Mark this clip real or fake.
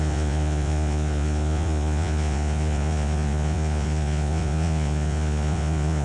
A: fake